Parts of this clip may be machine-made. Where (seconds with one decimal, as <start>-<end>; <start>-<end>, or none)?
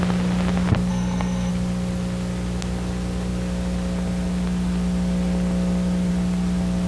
0.9-1.5